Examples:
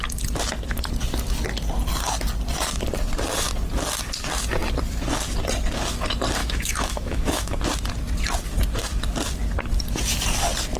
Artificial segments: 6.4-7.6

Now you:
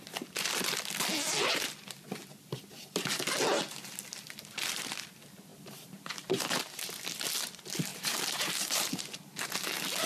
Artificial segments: 5.5-6.8; 7.9-9.3

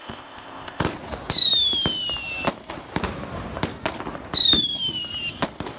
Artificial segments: 0.0-0.8

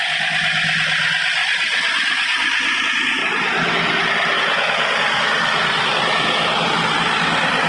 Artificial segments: none

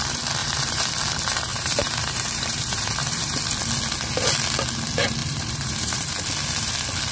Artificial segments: 0.4-0.9; 1.5-3.4; 5.2-6.1

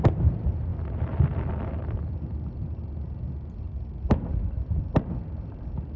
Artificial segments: none